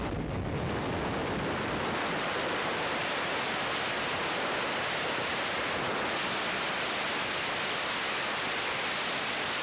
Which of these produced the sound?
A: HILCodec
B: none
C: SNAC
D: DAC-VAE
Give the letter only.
B